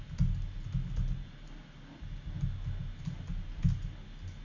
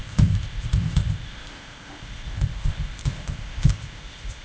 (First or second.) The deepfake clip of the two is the second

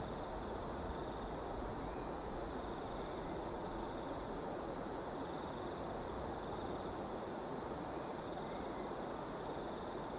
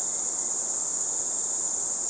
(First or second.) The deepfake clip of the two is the first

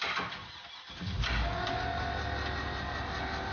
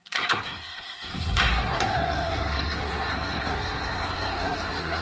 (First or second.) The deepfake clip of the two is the second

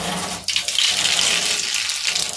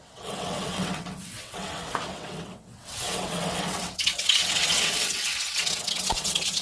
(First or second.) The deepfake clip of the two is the second